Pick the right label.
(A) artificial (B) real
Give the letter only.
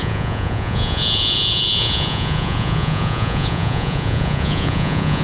A